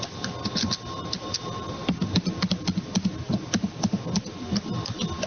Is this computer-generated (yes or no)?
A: no